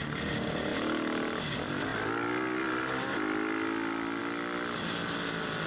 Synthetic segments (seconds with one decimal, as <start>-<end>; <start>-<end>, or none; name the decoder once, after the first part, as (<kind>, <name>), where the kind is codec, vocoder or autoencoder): none